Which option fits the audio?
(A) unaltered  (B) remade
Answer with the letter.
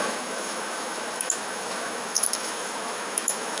B